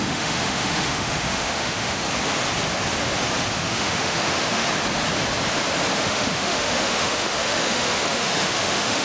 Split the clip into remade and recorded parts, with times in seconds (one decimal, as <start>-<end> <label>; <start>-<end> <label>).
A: 0.0-2.0 remade; 2.0-3.5 recorded; 3.5-4.6 remade; 4.6-5.9 recorded; 5.9-9.0 remade